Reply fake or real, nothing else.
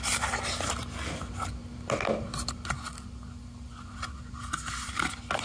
real